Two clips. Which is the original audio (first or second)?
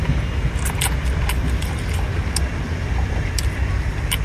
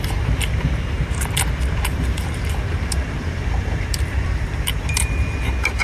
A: first